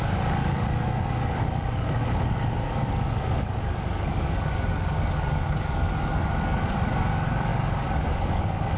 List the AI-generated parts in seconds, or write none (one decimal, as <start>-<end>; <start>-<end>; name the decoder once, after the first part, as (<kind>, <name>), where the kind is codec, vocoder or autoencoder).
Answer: 0.0-8.8 (codec, DAC)